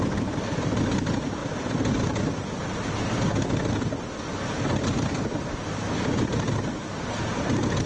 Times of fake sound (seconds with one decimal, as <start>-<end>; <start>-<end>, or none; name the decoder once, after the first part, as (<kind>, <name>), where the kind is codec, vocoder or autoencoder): none